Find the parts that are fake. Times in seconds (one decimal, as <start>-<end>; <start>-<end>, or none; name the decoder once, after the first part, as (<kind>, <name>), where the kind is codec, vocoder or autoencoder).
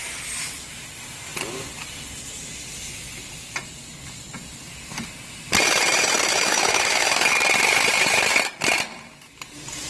6.3-7.3 (autoencoder, DAC-VAE)